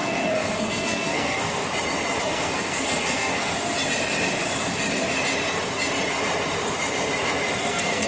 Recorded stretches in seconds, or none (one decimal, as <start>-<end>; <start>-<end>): 1.6-2.2; 3.3-7.6